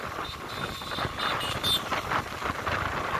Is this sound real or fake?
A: real